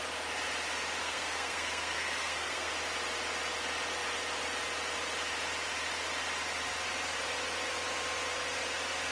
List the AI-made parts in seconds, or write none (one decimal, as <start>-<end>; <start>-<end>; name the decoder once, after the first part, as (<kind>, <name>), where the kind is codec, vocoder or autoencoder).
1.0-2.7 (codec, SNAC)

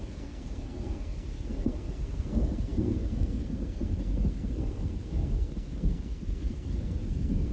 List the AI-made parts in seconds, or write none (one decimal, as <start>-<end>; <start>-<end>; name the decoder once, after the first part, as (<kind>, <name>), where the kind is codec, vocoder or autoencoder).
0.0-7.5 (codec, SNAC)

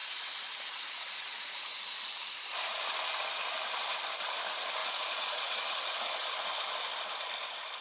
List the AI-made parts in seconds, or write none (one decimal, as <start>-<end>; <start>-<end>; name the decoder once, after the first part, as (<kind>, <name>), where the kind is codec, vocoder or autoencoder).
4.8-5.6 (vocoder, Vocos)

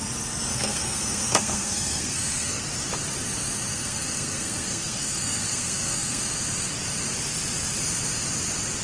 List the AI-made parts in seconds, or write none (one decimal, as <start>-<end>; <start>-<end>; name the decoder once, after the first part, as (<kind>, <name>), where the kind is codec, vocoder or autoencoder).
0.5-2.6 (codec, SNAC); 3.7-6.2

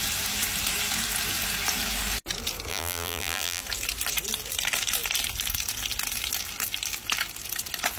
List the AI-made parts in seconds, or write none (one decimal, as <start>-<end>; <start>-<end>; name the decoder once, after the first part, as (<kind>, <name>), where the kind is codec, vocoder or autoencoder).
2.7-3.6 (vocoder, BigVGAN v2)

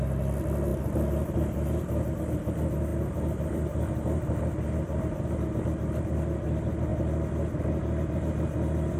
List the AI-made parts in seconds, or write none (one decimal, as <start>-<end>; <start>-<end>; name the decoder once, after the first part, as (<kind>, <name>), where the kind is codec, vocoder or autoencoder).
none

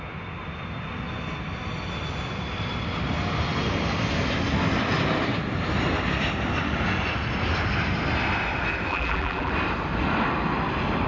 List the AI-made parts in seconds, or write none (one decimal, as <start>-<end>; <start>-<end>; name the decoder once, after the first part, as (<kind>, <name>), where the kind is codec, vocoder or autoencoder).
8.9-9.5 (vocoder, BigVGAN v2)

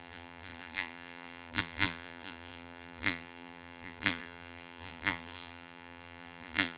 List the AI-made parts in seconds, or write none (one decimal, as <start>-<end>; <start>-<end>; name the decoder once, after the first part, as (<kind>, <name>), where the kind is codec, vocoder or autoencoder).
0.0-6.8 (vocoder, BigVGAN v2)